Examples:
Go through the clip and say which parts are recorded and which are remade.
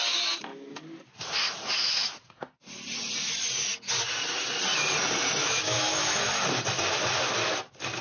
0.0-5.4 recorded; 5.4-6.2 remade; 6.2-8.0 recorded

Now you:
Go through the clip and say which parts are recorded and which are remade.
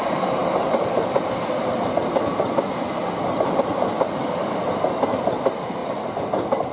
0.0-6.7 recorded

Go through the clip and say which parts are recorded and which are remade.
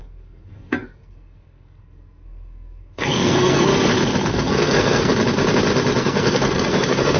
0.0-3.7 remade; 3.7-4.2 recorded; 4.2-5.1 remade; 5.1-6.0 recorded; 6.0-7.2 remade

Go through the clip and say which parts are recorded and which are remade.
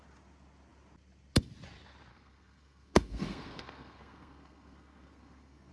0.0-2.1 recorded; 2.1-5.7 remade